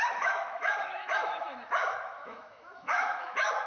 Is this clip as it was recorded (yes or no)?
no